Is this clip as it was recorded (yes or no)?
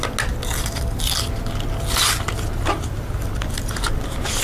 yes